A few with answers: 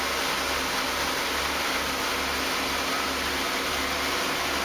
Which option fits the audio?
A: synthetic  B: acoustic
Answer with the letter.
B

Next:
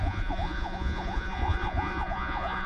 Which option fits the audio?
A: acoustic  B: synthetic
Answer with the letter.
B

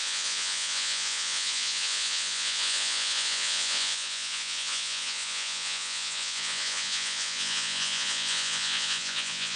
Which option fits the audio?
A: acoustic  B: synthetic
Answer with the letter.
B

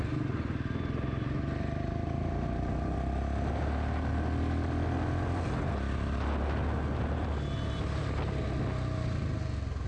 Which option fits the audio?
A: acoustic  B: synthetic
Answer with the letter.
A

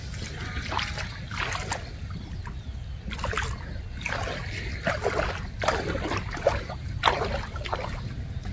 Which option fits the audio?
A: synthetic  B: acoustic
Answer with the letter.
B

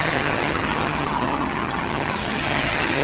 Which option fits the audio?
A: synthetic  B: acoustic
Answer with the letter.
A